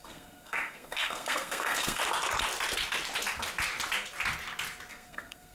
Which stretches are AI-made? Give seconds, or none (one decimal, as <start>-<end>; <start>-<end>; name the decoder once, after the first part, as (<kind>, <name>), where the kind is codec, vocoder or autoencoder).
0.0-2.0 (codec, SNAC); 4.9-5.5